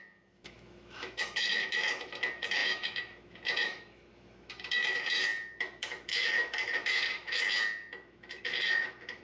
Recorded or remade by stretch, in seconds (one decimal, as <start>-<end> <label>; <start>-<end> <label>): 0.0-9.2 remade